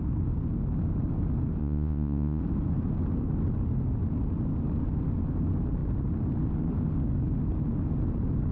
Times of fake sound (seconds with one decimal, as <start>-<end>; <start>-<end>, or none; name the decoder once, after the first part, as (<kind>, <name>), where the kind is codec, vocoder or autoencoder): 1.6-2.4 (vocoder, Vocos)